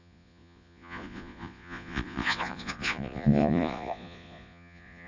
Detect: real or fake fake